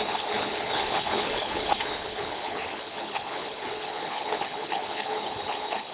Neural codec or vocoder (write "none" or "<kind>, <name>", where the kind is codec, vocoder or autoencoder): codec, HILCodec